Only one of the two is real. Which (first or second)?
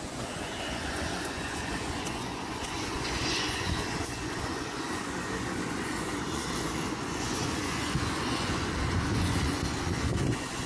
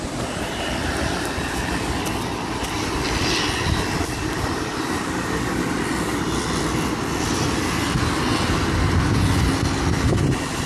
second